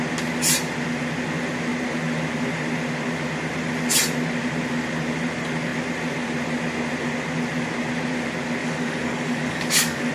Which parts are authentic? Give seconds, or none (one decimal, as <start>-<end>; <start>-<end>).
0.0-8.6